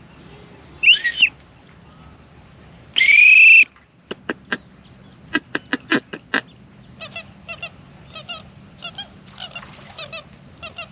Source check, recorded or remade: recorded